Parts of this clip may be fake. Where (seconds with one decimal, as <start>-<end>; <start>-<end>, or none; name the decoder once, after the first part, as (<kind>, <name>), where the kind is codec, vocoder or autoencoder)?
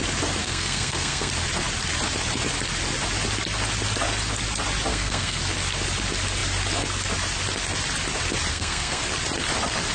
0.4-1.3 (codec, SNAC); 4.9-5.4; 8.5-9.0